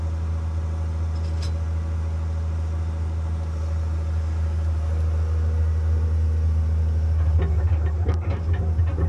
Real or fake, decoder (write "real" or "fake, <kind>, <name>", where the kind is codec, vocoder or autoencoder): real